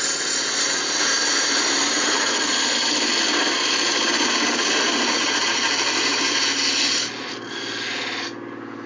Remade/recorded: recorded